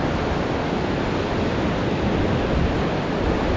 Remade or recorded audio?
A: recorded